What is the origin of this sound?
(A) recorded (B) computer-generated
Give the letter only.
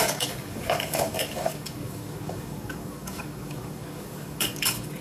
B